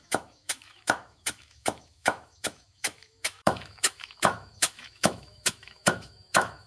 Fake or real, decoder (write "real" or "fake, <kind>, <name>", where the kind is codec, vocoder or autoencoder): fake, autoencoder, DAC-VAE